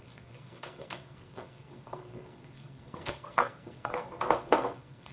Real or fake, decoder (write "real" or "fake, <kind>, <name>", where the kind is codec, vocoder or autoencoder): fake, codec, SNAC